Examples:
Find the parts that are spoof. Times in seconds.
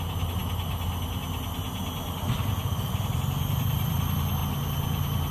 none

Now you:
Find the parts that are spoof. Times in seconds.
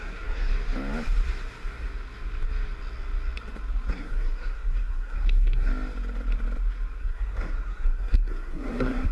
0.0-0.5 (codec, SNAC); 3.9-5.7; 7.0-9.1